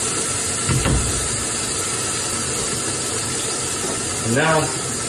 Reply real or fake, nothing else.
real